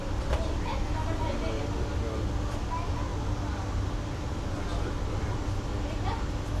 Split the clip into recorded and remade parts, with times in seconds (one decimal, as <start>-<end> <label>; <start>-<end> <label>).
0.0-6.6 recorded